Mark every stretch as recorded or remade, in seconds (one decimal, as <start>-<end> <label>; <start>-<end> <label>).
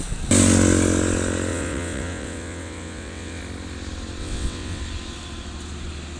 0.0-1.5 recorded; 1.5-3.4 remade; 3.4-4.2 recorded; 4.2-4.8 remade; 4.8-6.2 recorded